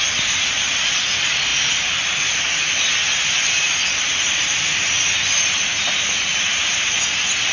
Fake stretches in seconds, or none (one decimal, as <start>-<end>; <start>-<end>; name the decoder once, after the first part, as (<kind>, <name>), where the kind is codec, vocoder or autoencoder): none